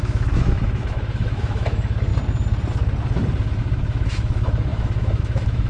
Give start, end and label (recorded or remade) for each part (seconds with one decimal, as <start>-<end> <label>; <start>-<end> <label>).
0.0-2.1 remade; 2.1-3.6 recorded; 3.6-5.7 remade